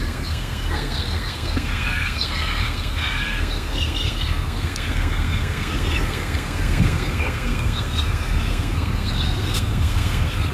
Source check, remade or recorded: remade